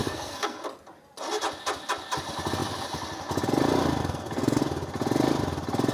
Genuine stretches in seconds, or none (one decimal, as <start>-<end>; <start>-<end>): 0.6-4.0; 4.6-5.9